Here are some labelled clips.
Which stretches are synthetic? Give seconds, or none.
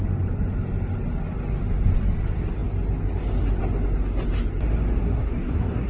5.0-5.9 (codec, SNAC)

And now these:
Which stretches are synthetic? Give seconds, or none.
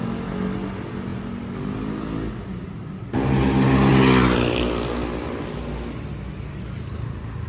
none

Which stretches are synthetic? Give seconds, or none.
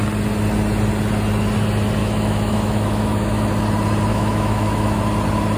2.0-3.5 (autoencoder, DAC-VAE); 4.1-5.0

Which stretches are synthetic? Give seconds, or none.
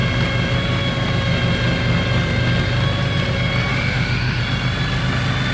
3.7-4.4 (autoencoder, DAC-VAE)